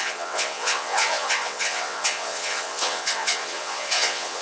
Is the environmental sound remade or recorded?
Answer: remade